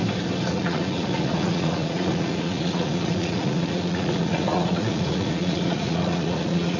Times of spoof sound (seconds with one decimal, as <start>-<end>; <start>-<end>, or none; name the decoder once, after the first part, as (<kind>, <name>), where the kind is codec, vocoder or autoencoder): 0.5-6.8 (vocoder, Vocos)